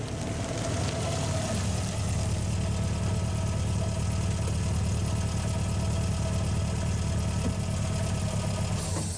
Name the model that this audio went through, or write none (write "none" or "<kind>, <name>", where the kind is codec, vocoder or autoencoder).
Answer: none